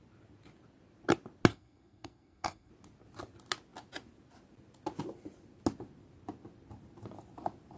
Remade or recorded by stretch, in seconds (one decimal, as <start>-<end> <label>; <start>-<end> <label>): 0.0-1.5 recorded; 1.5-2.7 remade; 2.7-7.8 recorded